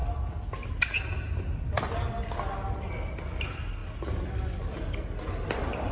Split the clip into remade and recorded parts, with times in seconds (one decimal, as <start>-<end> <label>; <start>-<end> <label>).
0.0-5.9 recorded